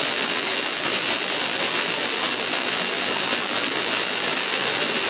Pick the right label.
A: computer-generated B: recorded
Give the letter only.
A